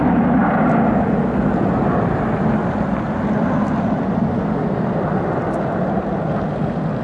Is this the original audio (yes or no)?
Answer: yes